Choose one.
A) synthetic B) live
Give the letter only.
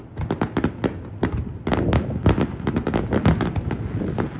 B